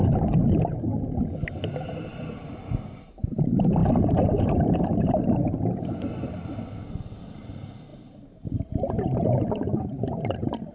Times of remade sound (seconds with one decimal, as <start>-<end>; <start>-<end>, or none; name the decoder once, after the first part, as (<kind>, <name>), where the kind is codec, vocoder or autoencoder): 7.9-9.4 (vocoder, BigVGAN v2)